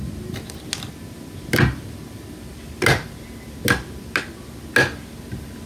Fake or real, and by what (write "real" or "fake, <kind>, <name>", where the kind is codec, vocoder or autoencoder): real